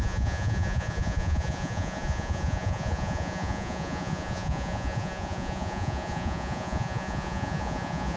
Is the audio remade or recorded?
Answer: remade